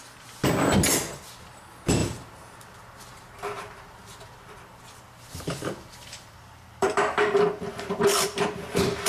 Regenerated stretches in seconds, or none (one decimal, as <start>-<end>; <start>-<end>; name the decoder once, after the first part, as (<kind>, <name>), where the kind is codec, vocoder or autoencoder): 2.0-7.2 (vocoder, BigVGAN v2); 7.7-9.1